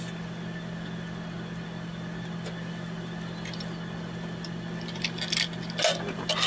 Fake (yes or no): no